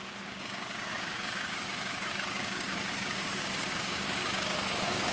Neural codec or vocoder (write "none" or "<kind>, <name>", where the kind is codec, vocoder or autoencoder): codec, DAC